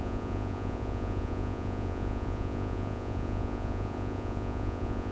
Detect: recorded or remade remade